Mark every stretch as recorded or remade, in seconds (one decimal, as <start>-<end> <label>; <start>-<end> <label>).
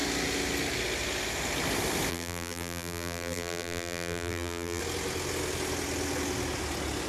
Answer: 0.0-2.1 recorded; 2.1-4.8 remade; 4.8-7.1 recorded